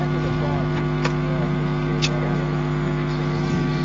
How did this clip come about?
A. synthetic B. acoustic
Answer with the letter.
A